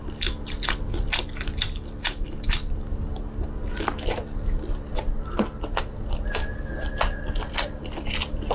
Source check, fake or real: real